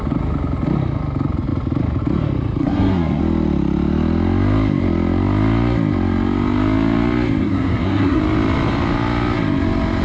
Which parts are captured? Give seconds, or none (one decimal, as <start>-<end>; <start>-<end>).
0.0-2.6; 3.2-7.4; 8.2-10.0